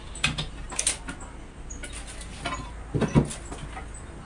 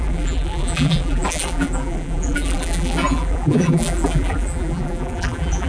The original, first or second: first